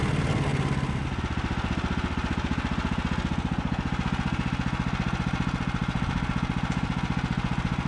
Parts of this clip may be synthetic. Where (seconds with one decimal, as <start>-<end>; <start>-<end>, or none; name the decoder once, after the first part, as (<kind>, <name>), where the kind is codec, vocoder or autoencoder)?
none